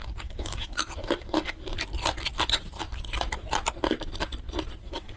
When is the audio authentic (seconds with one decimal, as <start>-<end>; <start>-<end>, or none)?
1.7-4.8